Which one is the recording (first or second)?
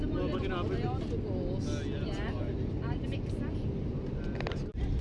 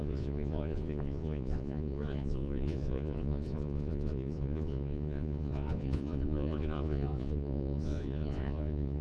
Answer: first